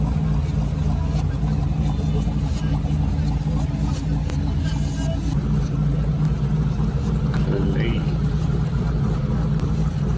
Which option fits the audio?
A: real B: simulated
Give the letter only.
A